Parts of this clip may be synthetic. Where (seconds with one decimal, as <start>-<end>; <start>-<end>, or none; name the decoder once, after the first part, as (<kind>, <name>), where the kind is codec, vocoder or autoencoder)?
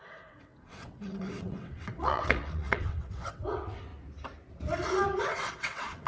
0.0-3.9 (vocoder, WaveNeXt); 5.2-6.1